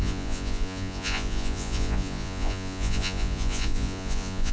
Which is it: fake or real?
fake